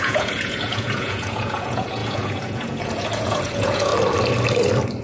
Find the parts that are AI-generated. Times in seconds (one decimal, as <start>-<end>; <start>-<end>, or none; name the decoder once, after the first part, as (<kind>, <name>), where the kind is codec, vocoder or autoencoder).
0.0-3.9 (vocoder, Vocos)